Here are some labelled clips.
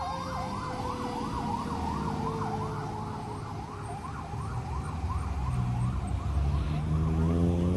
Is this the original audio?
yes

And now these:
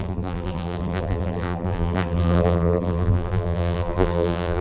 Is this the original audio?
no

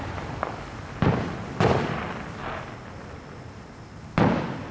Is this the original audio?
yes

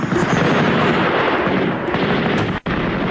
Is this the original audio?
yes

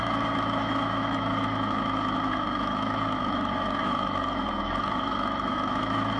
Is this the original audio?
no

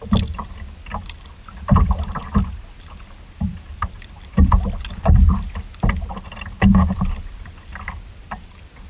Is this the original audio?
yes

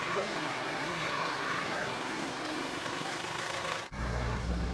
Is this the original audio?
no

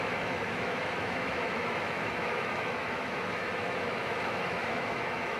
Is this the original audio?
no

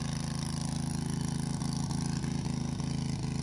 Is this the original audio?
yes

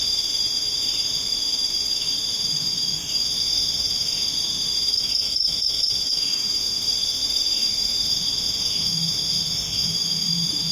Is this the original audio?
no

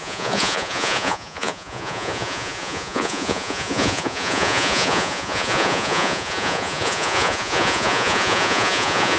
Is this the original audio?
no